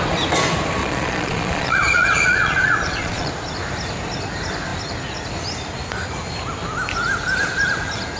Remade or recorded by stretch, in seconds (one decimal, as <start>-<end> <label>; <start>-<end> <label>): 0.0-0.8 recorded; 0.8-3.3 remade; 3.3-8.2 recorded